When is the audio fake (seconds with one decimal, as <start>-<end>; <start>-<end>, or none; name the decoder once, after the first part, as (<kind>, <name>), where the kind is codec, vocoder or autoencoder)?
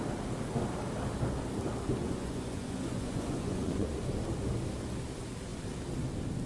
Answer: 2.0-3.9 (vocoder, Vocos)